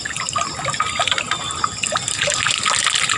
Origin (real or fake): real